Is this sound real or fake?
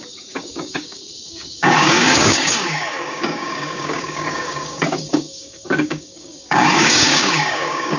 fake